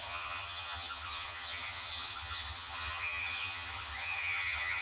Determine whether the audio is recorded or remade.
remade